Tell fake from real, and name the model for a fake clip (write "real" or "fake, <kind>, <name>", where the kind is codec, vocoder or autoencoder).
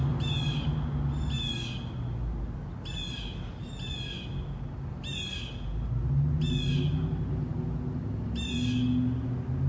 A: real